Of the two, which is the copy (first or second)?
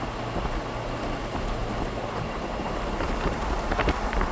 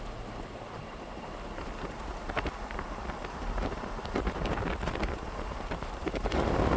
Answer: second